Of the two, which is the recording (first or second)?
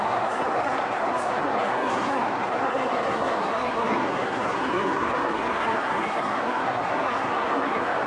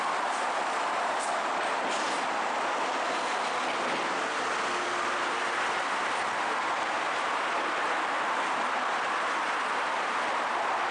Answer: second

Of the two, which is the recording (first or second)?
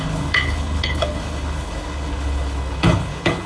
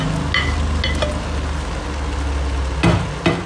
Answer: second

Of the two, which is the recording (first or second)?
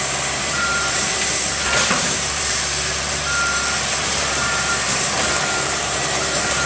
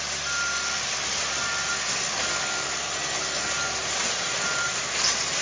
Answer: second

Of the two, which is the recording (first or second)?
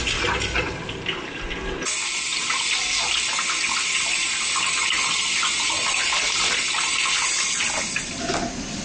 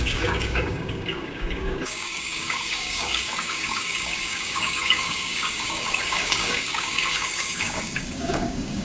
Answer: first